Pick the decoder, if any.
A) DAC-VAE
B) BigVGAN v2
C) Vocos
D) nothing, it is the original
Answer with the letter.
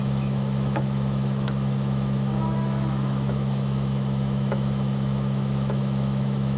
A